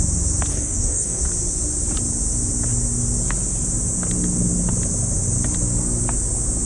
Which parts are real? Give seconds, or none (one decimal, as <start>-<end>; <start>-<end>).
0.0-0.5; 1.2-6.7